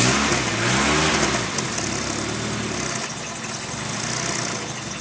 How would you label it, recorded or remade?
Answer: recorded